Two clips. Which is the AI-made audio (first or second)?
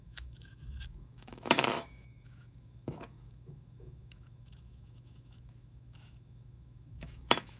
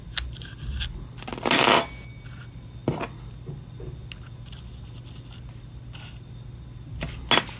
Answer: first